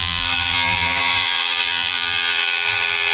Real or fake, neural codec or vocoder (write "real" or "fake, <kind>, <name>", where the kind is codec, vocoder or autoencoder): fake, vocoder, BigVGAN v2